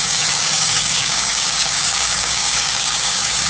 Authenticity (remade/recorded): remade